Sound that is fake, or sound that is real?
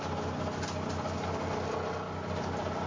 real